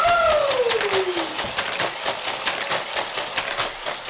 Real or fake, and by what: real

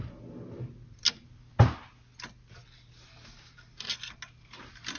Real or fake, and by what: real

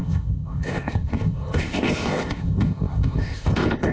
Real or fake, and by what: fake, codec, ZipCodec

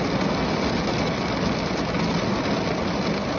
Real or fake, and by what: real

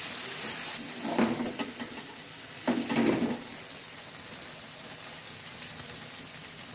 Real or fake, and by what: real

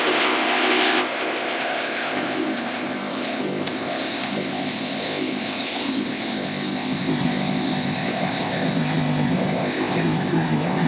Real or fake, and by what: fake, codec, ZipCodec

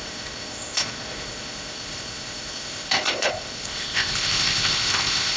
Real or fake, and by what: fake, codec, ZipCodec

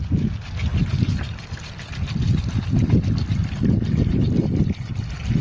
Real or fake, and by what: real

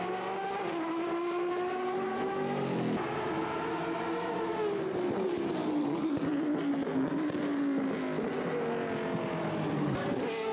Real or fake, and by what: real